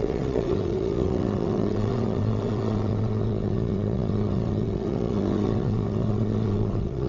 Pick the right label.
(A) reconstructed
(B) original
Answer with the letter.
A